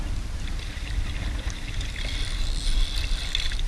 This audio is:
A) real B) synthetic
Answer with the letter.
A